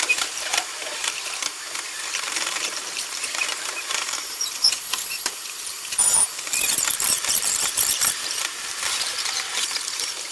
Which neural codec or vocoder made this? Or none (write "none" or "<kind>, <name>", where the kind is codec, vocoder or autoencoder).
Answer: vocoder, BigVGAN v2